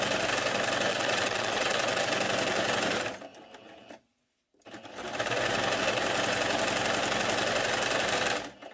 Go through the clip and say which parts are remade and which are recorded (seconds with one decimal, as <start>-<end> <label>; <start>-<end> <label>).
0.0-0.9 recorded; 0.9-2.0 remade; 2.0-8.7 recorded

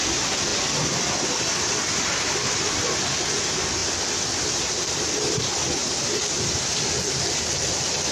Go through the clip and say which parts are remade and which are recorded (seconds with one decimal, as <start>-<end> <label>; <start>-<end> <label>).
0.0-8.1 recorded